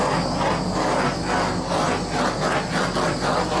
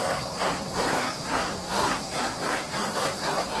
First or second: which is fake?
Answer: second